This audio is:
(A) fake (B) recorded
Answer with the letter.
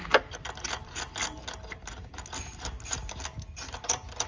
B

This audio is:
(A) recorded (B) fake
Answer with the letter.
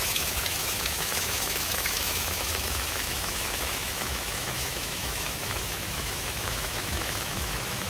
B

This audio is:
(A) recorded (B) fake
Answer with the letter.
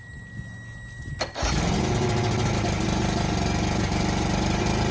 A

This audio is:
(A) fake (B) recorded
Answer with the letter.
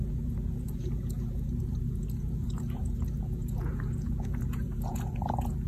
A